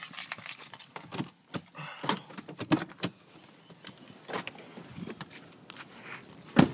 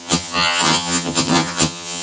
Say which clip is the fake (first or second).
second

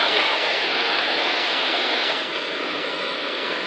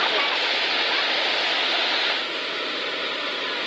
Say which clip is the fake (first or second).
first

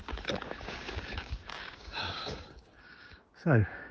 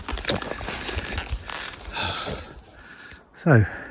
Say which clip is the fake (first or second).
first